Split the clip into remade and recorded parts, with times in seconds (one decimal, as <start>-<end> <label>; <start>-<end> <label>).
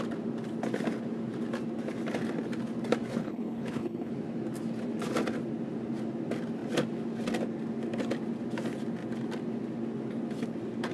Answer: 0.0-3.1 recorded; 3.1-4.1 remade; 4.1-10.9 recorded